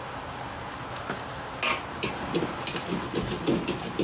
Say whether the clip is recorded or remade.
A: recorded